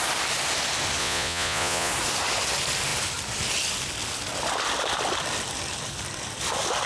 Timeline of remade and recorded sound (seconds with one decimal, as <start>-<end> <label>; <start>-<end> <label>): 0.0-1.0 recorded; 1.0-1.9 remade; 1.9-6.9 recorded